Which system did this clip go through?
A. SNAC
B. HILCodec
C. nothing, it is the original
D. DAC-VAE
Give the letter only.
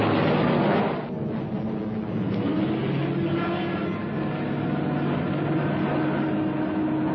C